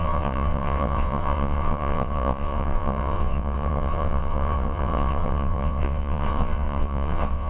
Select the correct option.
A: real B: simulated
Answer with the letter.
B